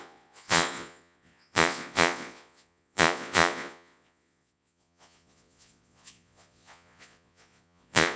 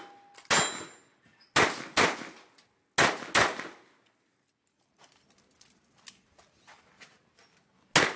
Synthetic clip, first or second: first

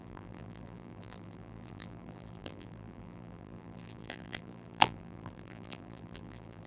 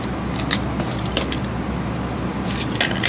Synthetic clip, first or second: first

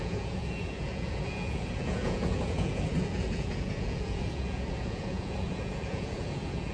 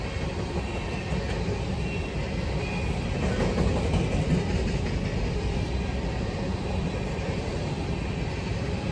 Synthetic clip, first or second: first